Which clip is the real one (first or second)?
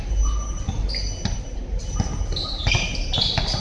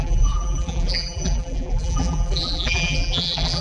first